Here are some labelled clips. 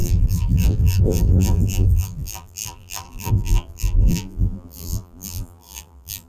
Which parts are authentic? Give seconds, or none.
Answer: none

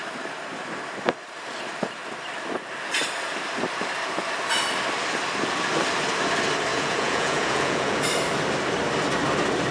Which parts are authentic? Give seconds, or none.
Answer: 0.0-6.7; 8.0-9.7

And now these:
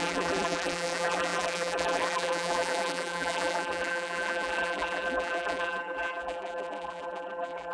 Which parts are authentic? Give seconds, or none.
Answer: none

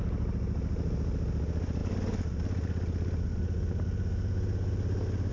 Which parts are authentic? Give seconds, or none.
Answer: 0.0-5.3

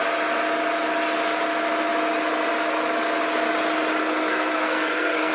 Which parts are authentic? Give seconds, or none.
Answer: 0.0-4.0

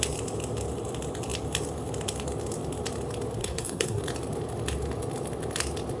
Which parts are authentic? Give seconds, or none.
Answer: 0.0-3.4; 4.0-6.0

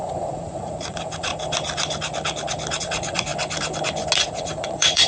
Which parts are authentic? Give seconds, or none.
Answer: 1.3-2.8; 3.3-4.2